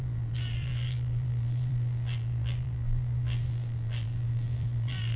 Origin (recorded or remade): remade